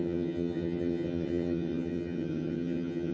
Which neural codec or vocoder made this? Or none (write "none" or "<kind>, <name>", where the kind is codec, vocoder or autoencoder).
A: vocoder, HiFi-GAN